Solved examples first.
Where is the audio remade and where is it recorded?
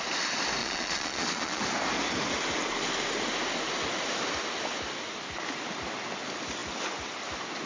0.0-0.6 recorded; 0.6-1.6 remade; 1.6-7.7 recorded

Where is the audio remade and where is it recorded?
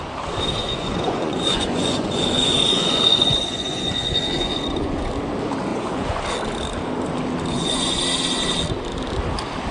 0.0-0.6 recorded; 0.6-5.1 remade; 5.1-5.7 recorded; 5.7-6.2 remade; 6.2-7.5 recorded; 7.5-8.0 remade; 8.0-9.7 recorded